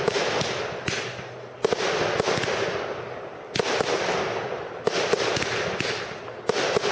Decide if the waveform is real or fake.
real